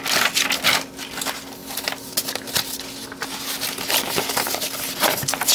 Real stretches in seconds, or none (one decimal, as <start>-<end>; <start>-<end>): 0.0-5.5